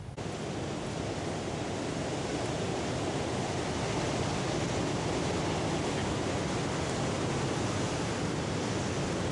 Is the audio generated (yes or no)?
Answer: no